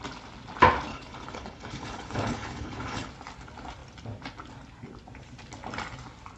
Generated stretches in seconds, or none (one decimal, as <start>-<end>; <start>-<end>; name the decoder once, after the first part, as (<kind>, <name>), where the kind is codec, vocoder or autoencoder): 0.9-3.1 (codec, HILCodec)